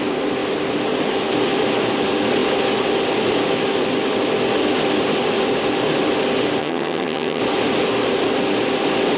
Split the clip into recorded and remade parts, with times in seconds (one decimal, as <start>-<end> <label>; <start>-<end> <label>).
0.0-6.6 recorded; 6.6-7.4 remade; 7.4-9.2 recorded